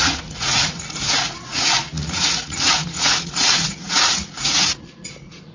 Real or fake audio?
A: fake